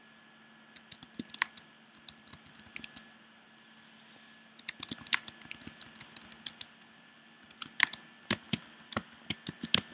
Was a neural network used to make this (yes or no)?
no